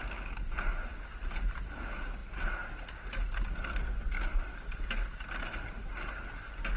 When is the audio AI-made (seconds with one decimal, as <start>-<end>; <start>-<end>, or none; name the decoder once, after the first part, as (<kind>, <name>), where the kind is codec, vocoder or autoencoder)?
none